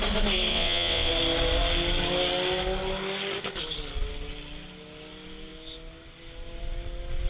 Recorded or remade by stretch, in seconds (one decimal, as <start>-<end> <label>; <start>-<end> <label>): 0.0-0.5 recorded; 0.5-1.1 remade; 1.1-7.3 recorded